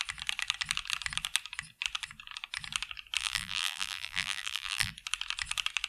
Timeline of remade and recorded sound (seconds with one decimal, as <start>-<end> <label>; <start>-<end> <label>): 0.0-3.2 recorded; 3.2-4.9 remade; 4.9-5.9 recorded